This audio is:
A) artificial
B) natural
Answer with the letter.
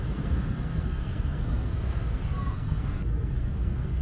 A